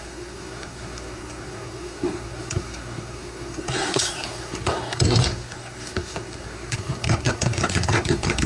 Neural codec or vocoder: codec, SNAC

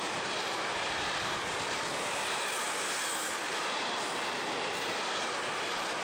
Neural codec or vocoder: none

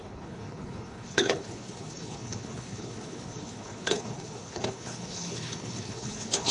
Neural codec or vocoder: codec, HILCodec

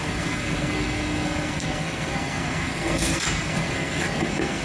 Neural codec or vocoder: codec, SNAC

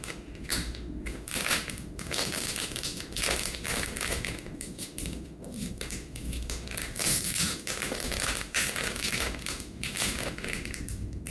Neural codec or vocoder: autoencoder, DAC-VAE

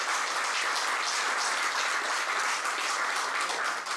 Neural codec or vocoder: none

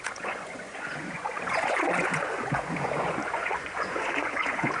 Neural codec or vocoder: vocoder, Vocos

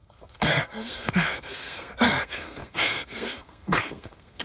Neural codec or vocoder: codec, SNAC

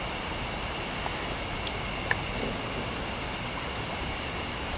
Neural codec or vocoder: none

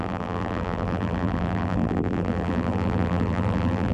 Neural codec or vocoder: vocoder, BigVGAN v2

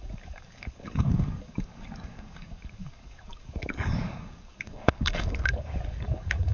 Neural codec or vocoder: codec, DAC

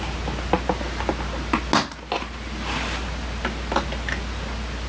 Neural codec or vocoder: none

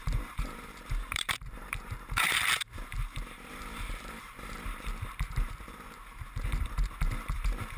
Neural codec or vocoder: vocoder, BigVGAN v2